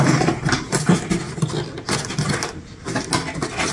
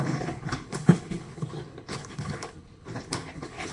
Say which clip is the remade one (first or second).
second